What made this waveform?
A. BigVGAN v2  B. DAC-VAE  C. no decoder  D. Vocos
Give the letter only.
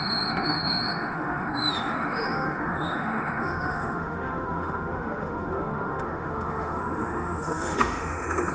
B